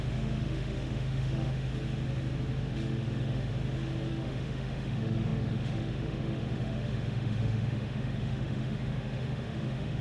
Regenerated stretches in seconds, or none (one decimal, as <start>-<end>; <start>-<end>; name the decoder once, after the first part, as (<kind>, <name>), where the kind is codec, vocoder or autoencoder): 0.0-1.7 (autoencoder, DAC-VAE); 2.6-3.5; 4.1-10.0